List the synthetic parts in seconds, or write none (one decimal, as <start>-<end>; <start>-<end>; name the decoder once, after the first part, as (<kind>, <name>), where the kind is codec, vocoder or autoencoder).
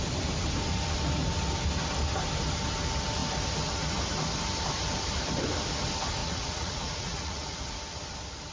6.2-7.8 (vocoder, Vocos)